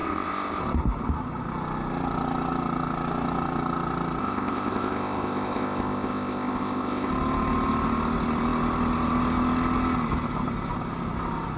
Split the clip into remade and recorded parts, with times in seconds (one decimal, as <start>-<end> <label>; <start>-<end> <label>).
0.0-0.6 remade; 0.6-4.2 recorded; 4.2-7.1 remade; 7.1-11.6 recorded